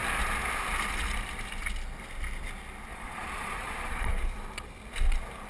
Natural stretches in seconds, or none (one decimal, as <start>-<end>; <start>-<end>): 0.0-2.9; 4.1-5.5